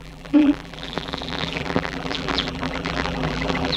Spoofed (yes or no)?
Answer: yes